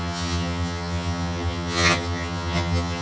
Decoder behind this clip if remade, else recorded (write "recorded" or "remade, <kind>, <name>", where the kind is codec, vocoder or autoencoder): remade, vocoder, HiFi-GAN